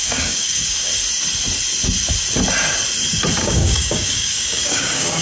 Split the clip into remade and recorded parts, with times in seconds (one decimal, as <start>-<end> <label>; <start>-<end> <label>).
0.0-0.9 remade; 0.9-3.4 recorded; 3.4-5.2 remade